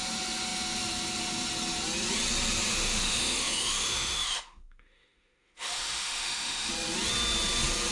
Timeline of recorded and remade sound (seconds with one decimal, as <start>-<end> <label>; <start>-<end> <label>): 0.0-2.7 recorded; 2.7-6.7 remade; 6.7-7.9 recorded